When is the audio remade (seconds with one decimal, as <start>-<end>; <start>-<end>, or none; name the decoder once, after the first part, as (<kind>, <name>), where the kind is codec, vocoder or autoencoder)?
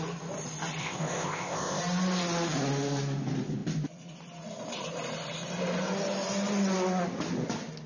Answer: 0.8-1.8 (codec, ZipCodec)